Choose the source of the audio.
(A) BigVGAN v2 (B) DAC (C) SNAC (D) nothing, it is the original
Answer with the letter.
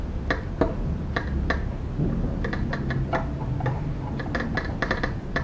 D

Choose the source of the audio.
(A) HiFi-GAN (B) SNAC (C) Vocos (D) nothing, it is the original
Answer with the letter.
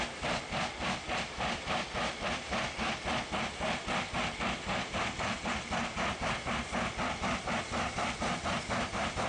D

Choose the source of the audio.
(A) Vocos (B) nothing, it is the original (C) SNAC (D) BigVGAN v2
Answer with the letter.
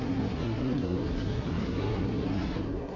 C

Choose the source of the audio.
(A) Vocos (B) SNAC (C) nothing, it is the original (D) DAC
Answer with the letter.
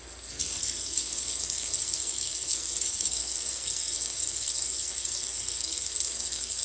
B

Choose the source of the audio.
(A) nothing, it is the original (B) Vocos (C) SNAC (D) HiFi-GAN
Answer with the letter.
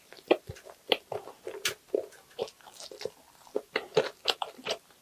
A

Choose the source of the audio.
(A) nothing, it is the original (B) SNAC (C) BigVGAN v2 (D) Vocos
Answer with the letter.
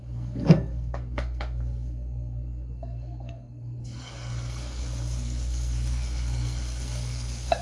B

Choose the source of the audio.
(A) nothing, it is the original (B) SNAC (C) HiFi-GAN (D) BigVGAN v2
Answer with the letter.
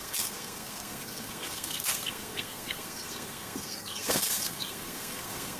B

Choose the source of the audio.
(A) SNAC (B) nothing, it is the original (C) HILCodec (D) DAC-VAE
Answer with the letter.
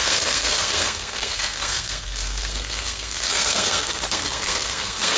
A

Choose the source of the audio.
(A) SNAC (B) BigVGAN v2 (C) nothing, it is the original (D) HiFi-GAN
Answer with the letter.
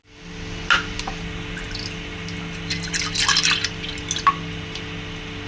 C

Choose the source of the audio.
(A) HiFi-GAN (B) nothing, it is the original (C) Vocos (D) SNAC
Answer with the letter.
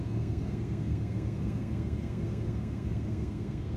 D